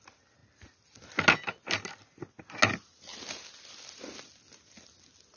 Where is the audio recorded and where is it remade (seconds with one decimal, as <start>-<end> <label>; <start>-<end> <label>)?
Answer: 0.0-5.4 recorded